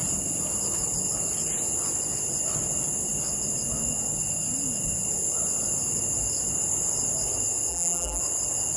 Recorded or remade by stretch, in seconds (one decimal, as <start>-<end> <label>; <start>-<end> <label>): 0.0-7.7 recorded; 7.7-8.2 remade; 8.2-8.8 recorded